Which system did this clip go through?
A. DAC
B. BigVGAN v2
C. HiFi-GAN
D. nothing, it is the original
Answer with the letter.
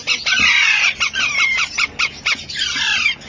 D